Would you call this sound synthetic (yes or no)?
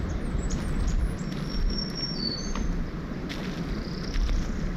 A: yes